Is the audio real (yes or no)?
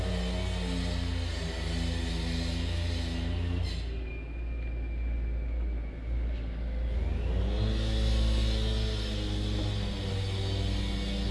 yes